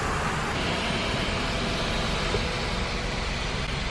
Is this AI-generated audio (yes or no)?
no